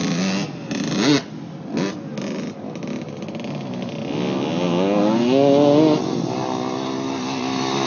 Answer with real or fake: real